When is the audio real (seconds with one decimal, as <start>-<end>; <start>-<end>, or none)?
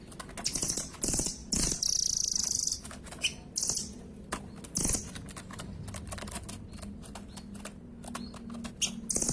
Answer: 0.0-9.3